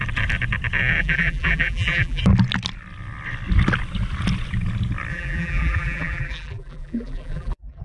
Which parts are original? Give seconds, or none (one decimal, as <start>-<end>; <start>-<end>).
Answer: 0.0-1.0; 2.2-5.1